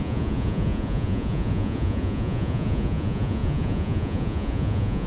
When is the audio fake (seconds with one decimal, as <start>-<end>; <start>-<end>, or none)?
0.0-5.1